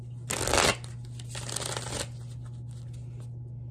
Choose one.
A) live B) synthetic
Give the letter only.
A